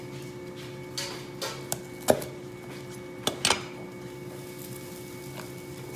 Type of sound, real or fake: real